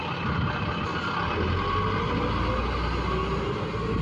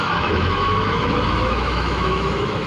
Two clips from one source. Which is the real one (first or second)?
first